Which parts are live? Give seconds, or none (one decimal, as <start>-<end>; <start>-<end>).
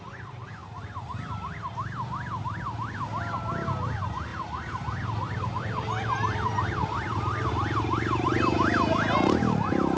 0.0-4.3; 7.5-10.0